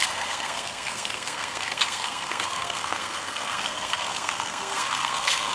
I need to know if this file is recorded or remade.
remade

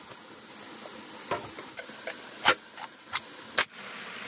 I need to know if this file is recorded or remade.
recorded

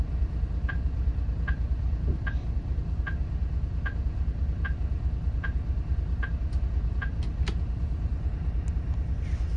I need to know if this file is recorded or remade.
recorded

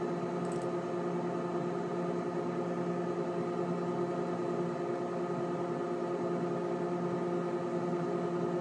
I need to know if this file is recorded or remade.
recorded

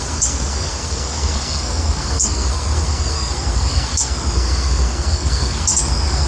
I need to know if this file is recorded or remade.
remade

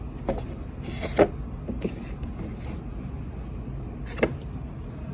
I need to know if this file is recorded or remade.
recorded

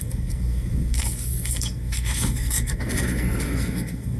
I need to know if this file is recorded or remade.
remade